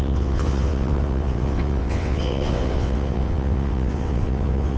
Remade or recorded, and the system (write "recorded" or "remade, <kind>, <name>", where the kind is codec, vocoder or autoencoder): remade, vocoder, WaveNeXt